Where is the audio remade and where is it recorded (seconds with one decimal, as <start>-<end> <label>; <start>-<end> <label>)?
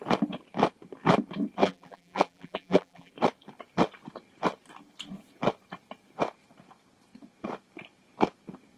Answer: 0.0-1.6 recorded; 1.6-3.1 remade; 3.1-8.8 recorded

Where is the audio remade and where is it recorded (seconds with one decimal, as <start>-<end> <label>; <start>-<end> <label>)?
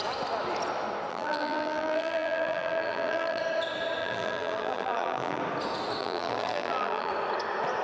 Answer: 0.0-1.1 recorded; 1.1-3.4 remade; 3.4-4.0 recorded; 4.0-5.4 remade; 5.4-6.0 recorded; 6.0-7.1 remade; 7.1-7.8 recorded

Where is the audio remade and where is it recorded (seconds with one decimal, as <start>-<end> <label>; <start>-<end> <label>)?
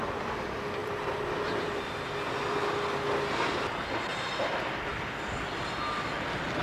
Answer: 0.0-0.8 recorded; 0.8-1.9 remade; 1.9-4.1 recorded; 4.1-4.9 remade; 4.9-6.6 recorded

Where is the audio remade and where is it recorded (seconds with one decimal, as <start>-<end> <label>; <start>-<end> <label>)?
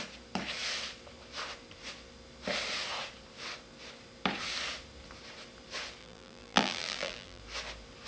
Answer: 0.0-6.0 recorded; 6.0-7.4 remade; 7.4-8.1 recorded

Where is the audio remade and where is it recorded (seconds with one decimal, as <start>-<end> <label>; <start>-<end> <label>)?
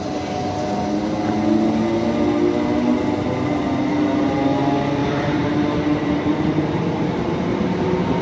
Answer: 0.0-5.0 recorded; 5.0-6.9 remade; 6.9-8.2 recorded